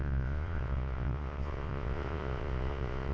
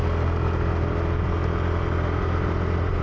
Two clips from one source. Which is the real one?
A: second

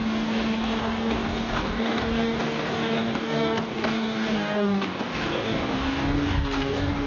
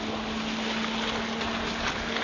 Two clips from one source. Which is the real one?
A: second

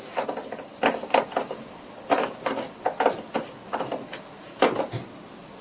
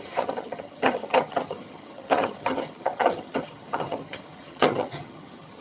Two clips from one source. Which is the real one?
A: first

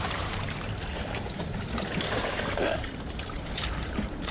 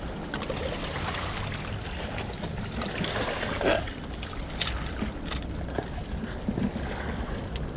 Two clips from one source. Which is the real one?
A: second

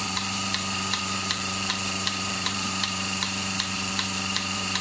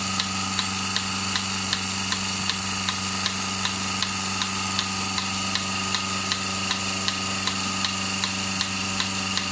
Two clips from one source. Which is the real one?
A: second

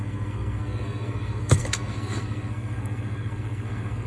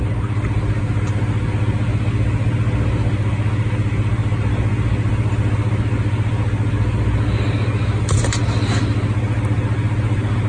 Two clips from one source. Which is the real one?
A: second